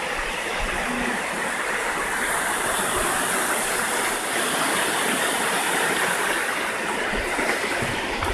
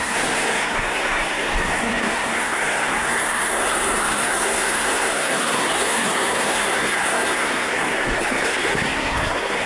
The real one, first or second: first